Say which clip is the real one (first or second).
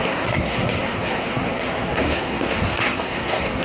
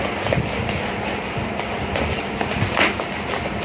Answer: second